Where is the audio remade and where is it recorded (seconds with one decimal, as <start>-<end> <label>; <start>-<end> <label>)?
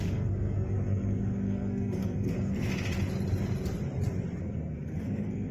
0.0-2.7 remade; 2.7-4.4 recorded; 4.4-5.5 remade